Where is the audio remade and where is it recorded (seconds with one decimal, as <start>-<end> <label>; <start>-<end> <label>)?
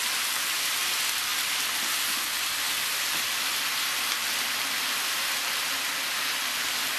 0.0-7.0 recorded